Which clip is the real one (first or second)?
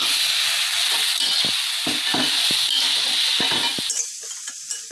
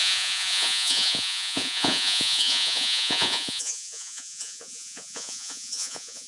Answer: first